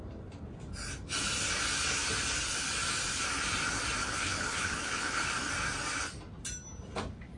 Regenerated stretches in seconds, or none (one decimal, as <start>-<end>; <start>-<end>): 4.0-5.3